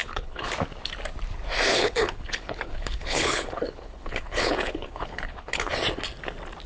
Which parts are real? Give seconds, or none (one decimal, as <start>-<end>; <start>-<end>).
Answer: 0.5-1.7; 5.7-6.7